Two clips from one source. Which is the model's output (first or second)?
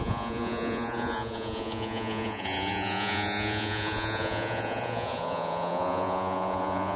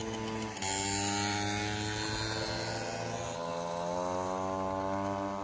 first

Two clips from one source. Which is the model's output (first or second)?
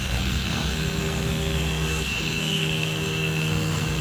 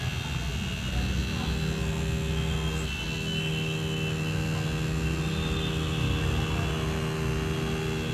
first